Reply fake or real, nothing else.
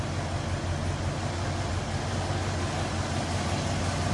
real